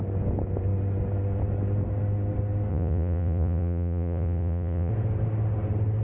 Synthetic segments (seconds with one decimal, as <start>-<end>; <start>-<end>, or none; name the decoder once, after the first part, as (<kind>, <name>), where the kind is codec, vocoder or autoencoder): 2.7-4.9 (vocoder, Vocos)